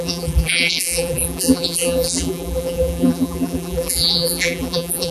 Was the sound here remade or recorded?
remade